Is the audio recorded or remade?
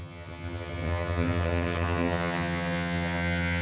remade